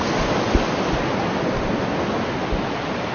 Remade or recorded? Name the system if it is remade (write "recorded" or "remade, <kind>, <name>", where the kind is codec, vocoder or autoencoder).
recorded